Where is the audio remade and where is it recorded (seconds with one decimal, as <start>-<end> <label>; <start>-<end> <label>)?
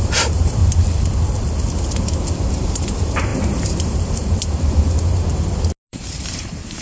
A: 0.0-0.6 remade; 0.6-2.5 recorded; 2.5-5.3 remade; 5.3-5.9 recorded; 5.9-6.8 remade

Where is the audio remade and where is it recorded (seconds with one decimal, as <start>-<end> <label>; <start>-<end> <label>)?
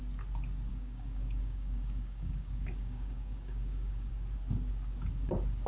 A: 0.0-0.7 recorded; 0.7-4.1 remade; 4.1-5.7 recorded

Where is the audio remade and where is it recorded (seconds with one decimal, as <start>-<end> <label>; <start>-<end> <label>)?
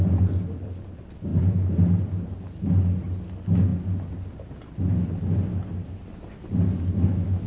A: 0.0-7.5 recorded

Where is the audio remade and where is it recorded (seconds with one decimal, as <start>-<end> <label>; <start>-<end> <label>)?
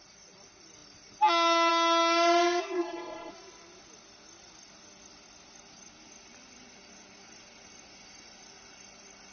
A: 0.0-2.6 recorded; 2.6-3.3 remade; 3.3-9.3 recorded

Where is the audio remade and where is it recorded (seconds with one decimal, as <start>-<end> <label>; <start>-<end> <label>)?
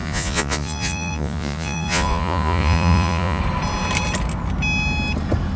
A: 0.0-3.4 remade; 3.4-5.6 recorded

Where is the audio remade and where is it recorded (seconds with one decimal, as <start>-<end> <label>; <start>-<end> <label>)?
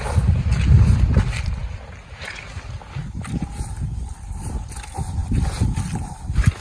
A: 0.0-6.6 recorded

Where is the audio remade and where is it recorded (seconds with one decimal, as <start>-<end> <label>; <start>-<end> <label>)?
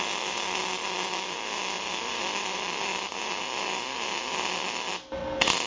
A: 0.0-2.9 remade; 2.9-4.5 recorded; 4.5-5.2 remade; 5.2-5.7 recorded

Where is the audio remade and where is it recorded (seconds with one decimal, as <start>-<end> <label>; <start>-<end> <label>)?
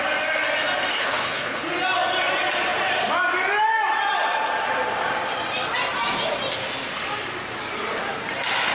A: 0.0-0.9 recorded; 0.9-1.6 remade; 1.6-8.7 recorded